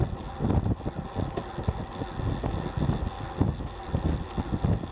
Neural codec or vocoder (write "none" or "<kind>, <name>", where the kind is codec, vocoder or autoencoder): none